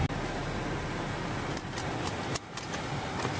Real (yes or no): yes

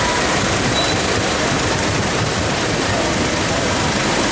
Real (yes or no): no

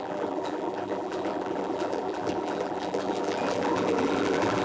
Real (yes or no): no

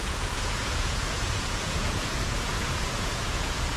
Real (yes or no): no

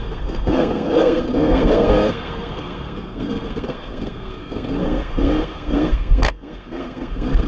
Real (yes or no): no